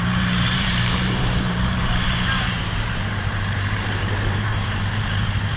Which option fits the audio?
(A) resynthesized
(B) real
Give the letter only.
A